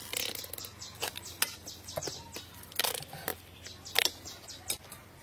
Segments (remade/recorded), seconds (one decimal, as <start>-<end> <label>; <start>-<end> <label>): 0.0-5.2 recorded

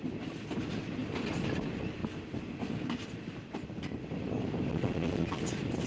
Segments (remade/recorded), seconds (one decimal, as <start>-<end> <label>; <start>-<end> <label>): 0.0-4.7 recorded; 4.7-5.4 remade; 5.4-5.9 recorded

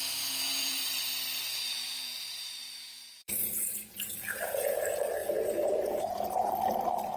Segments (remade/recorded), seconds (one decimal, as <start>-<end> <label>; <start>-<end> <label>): 0.0-0.9 remade; 0.9-1.5 recorded; 1.5-4.8 remade; 4.8-5.2 recorded; 5.2-6.5 remade; 6.5-7.2 recorded

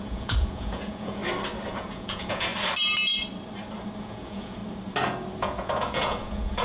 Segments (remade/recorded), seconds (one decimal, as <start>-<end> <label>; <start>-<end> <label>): 0.0-1.2 remade; 1.2-1.7 recorded; 1.7-2.5 remade; 2.5-4.0 recorded; 4.0-4.6 remade; 4.6-5.4 recorded; 5.4-6.6 remade

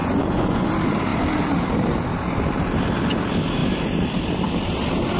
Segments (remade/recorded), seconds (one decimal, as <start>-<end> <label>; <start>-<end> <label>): 0.0-0.7 remade; 0.7-5.2 recorded